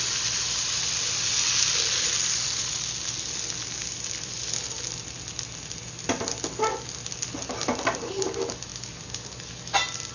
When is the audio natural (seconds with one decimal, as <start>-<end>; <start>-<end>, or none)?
0.0-10.1